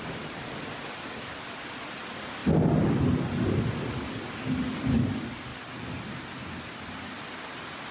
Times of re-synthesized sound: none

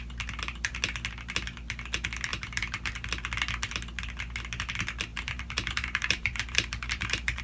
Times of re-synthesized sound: 2.3-3.1; 5.1-7.4

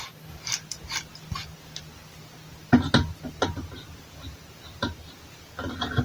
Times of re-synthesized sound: none

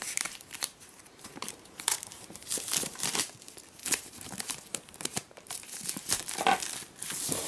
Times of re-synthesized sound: 0.0-2.4; 3.8-6.3

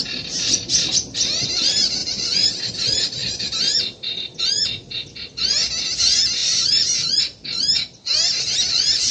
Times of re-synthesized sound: 2.0-2.5; 6.4-7.2

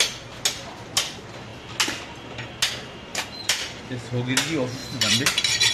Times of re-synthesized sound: 3.1-3.8; 4.8-5.7